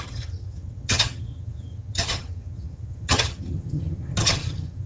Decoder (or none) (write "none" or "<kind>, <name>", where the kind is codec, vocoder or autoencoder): vocoder, HiFi-GAN